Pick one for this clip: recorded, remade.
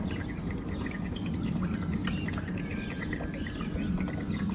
recorded